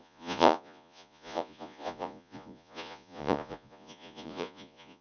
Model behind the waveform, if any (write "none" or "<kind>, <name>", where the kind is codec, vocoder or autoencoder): vocoder, Vocos